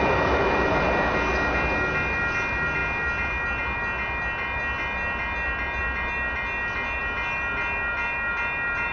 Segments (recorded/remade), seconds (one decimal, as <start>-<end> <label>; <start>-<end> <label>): 0.0-8.9 recorded